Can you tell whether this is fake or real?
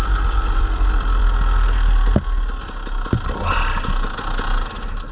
real